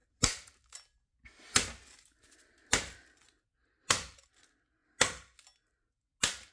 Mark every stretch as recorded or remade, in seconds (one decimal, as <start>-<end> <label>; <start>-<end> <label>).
0.0-6.5 recorded